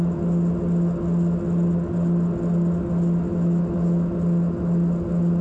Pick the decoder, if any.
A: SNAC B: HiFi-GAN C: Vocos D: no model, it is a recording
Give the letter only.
D